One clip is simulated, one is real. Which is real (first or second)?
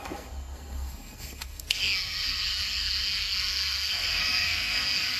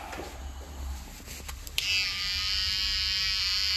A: second